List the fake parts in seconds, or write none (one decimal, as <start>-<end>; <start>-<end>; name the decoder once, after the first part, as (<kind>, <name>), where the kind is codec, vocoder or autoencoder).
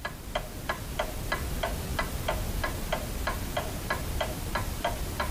0.0-5.3 (vocoder, BigVGAN v2)